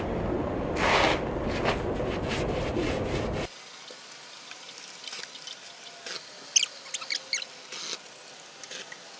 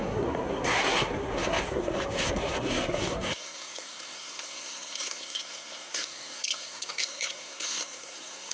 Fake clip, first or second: second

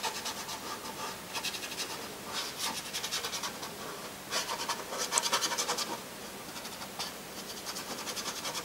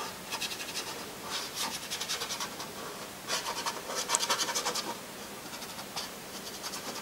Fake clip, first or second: second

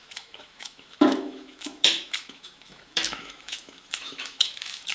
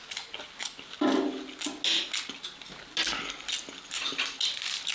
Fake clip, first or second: first